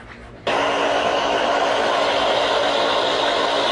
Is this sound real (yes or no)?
yes